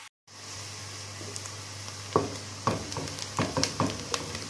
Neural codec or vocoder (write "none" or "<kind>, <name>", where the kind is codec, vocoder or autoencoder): none